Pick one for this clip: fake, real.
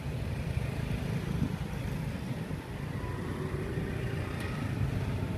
real